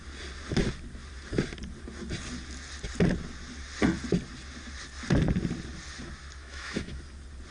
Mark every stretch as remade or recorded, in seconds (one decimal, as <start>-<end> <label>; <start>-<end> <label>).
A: 0.0-6.4 recorded; 6.4-7.0 remade; 7.0-7.5 recorded